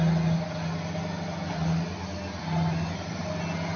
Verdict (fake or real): real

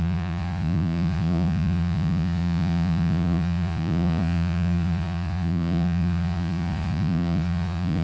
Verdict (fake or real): fake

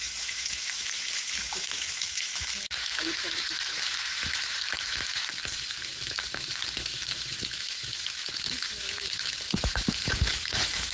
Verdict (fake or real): fake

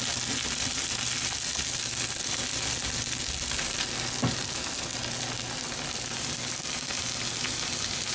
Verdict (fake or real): real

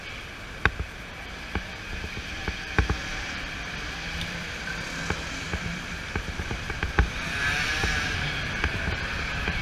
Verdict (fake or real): fake